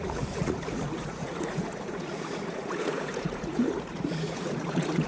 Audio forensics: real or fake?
fake